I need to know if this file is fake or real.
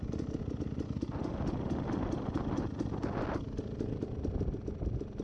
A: real